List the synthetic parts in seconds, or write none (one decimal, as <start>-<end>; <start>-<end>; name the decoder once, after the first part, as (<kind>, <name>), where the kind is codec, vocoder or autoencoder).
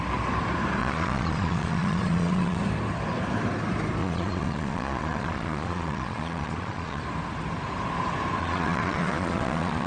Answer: 0.8-2.6 (vocoder, Vocos); 4.0-7.0; 8.4-9.9